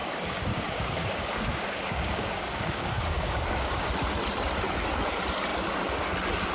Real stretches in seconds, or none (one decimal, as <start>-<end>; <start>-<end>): 3.9-6.5